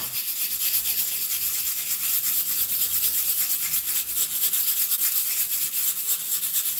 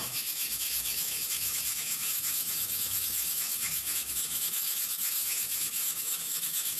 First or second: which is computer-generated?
second